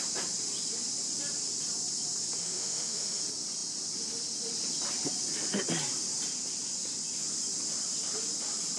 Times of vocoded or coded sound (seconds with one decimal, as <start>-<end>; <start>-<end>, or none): 2.4-3.2